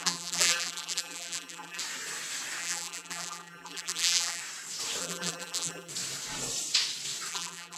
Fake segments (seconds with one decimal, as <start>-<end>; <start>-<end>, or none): 0.0-1.8; 2.6-4.4; 5.0-5.9; 7.3-7.8